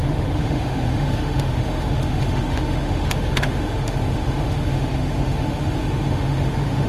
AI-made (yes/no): yes